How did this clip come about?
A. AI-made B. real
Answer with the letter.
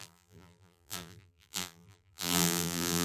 A